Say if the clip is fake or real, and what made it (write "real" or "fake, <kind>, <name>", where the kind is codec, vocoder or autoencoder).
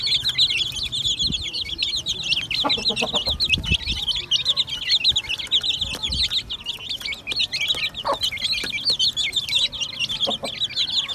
real